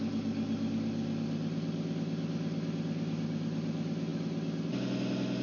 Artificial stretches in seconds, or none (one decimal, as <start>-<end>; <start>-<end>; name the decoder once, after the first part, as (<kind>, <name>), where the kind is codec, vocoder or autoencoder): none